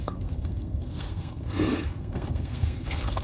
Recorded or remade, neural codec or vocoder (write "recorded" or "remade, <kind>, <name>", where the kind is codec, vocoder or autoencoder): remade, codec, SNAC